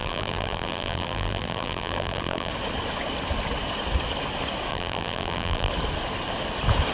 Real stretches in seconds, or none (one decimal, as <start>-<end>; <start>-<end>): 2.5-4.7; 5.7-6.9